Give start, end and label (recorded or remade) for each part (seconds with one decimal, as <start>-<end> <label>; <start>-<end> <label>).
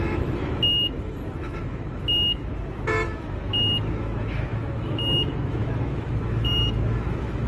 0.0-7.5 remade